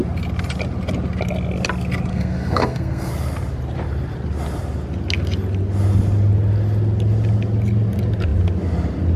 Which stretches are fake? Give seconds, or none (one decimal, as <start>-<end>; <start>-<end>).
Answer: 2.1-3.1